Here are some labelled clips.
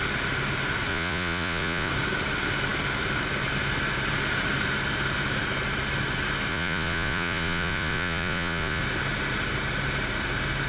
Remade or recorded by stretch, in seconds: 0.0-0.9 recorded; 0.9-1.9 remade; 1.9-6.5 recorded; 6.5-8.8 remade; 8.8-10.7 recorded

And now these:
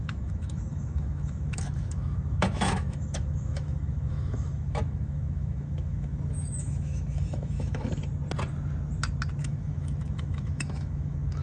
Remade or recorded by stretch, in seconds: 0.0-8.0 remade; 8.0-9.4 recorded; 9.4-11.4 remade

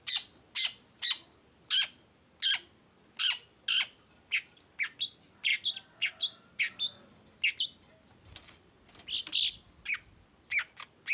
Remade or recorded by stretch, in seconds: 0.0-11.1 recorded

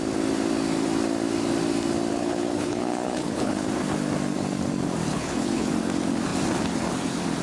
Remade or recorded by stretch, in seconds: 0.0-2.1 recorded; 2.1-3.7 remade; 3.7-5.1 recorded; 5.1-5.7 remade; 5.7-7.4 recorded

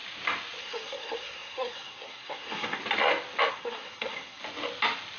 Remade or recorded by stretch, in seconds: 0.0-0.6 recorded; 0.6-2.8 remade; 2.8-3.5 recorded; 3.5-4.4 remade; 4.4-5.2 recorded

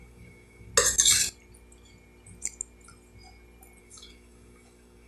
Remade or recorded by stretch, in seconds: 0.0-0.7 remade; 0.7-3.8 recorded; 3.8-5.1 remade

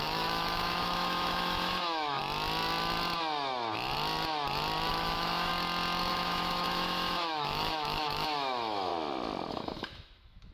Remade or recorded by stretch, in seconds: 0.0-2.2 remade; 2.2-4.9 recorded; 4.9-5.5 remade; 5.5-6.1 recorded; 6.1-8.9 remade; 8.9-9.5 recorded; 9.5-10.5 remade

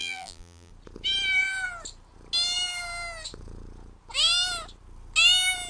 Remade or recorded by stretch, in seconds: 0.0-0.7 remade; 0.7-5.7 recorded